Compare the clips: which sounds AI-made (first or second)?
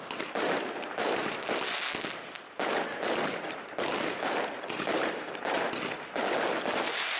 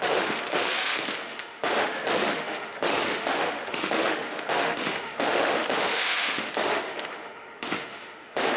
second